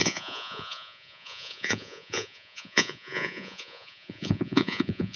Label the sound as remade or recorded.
remade